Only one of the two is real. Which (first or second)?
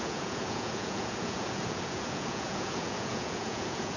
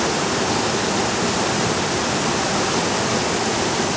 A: second